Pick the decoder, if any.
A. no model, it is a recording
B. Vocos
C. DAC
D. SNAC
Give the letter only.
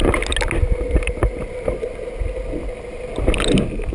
A